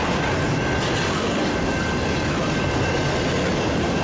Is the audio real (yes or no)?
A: yes